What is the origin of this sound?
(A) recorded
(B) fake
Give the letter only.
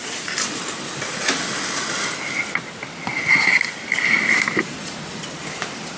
A